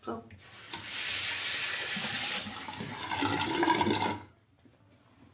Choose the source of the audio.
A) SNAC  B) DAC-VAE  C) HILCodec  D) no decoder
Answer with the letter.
D